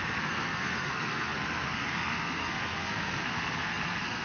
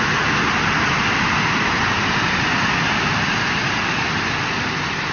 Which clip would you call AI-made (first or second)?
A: first